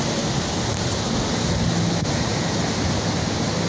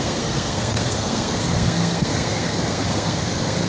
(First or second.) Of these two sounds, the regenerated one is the second